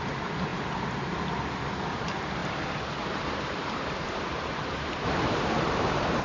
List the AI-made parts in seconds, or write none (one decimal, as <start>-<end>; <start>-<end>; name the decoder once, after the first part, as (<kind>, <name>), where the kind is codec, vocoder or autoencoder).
2.4-6.2 (vocoder, BigVGAN v2)